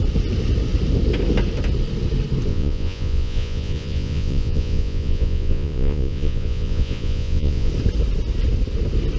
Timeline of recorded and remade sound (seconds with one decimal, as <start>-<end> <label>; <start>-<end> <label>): 0.0-2.5 recorded; 2.5-7.7 remade; 7.7-9.2 recorded